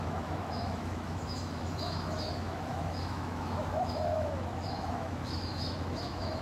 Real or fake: fake